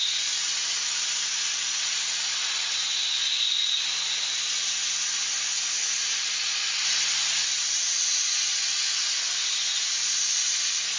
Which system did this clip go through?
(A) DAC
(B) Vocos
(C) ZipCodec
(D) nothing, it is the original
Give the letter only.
D